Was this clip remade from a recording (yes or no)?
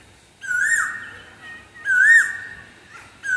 no